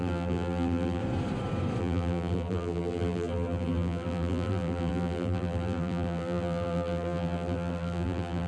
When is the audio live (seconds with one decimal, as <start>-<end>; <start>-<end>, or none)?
1.0-1.8